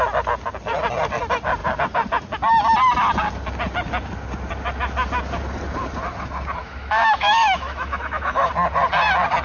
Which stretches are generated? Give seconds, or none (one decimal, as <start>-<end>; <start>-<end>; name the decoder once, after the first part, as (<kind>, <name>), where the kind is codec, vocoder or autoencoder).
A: 6.6-8.5 (autoencoder, DAC-VAE)